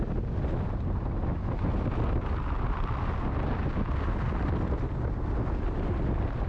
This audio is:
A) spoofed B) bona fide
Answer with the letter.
B